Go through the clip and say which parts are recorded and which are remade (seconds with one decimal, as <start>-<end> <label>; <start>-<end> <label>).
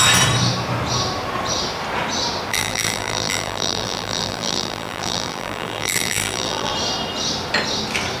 0.0-2.5 recorded; 2.5-6.7 remade; 6.7-8.2 recorded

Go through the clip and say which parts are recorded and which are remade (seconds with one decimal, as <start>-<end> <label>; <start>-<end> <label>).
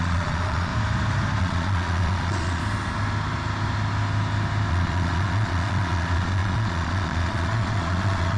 0.0-0.7 remade; 0.7-1.4 recorded; 1.4-2.6 remade; 2.6-4.7 recorded; 4.7-8.4 remade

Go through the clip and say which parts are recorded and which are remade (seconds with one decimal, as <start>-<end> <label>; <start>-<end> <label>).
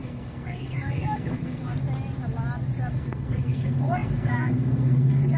0.0-1.7 remade; 1.7-2.9 recorded; 2.9-5.4 remade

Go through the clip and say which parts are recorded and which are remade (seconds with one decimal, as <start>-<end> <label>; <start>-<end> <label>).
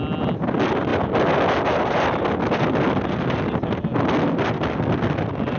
0.0-5.6 recorded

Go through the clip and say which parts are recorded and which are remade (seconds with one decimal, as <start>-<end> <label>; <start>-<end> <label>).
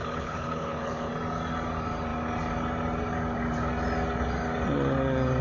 0.0-1.1 remade; 1.1-5.4 recorded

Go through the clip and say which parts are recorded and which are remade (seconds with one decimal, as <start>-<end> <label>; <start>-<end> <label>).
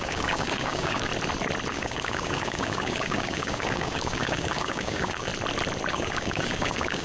0.0-1.1 remade; 1.1-1.7 recorded; 1.7-5.3 remade; 5.3-5.9 recorded; 5.9-7.0 remade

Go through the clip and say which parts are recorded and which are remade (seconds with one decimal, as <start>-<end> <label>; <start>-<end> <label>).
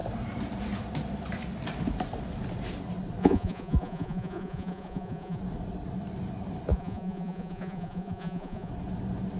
0.0-3.2 recorded; 3.2-5.4 remade; 5.4-6.7 recorded; 6.7-8.7 remade; 8.7-9.4 recorded